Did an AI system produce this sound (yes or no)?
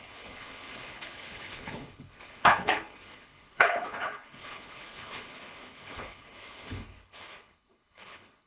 yes